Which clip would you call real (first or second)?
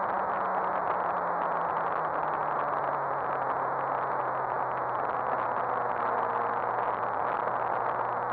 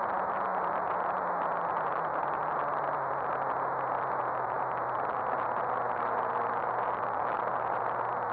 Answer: first